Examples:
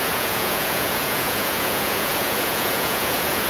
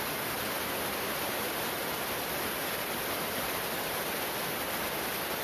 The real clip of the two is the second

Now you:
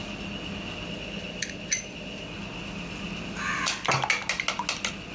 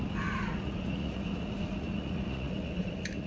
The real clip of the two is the first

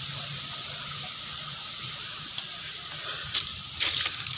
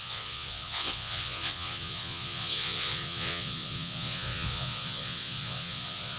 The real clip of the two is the first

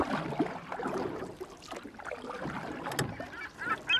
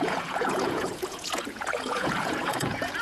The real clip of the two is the first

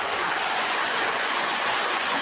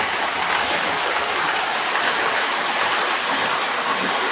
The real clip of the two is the second